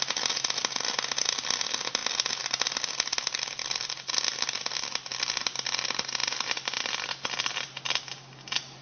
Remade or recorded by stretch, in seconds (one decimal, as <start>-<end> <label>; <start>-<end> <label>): 0.0-8.8 recorded